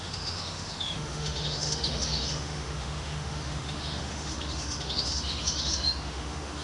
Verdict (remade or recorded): remade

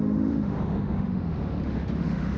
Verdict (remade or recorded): remade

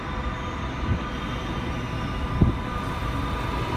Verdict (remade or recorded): recorded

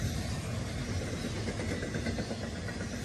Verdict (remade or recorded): recorded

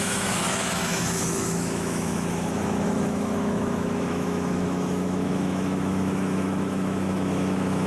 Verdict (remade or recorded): remade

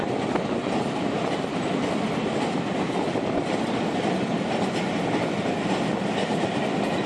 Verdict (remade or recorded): recorded